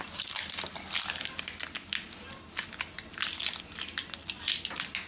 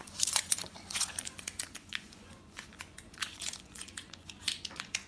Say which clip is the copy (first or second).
second